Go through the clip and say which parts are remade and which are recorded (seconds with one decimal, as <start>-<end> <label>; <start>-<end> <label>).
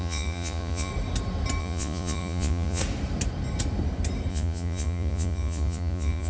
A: 0.0-0.9 remade; 0.9-1.6 recorded; 1.6-2.8 remade; 2.8-4.3 recorded; 4.3-6.3 remade